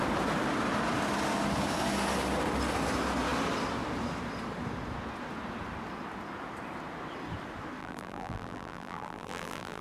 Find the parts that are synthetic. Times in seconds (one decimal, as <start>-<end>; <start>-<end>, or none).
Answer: 7.8-9.8